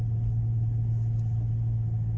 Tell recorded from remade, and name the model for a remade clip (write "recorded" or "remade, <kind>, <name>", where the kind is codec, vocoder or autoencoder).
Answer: recorded